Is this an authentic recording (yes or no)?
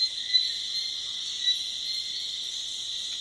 yes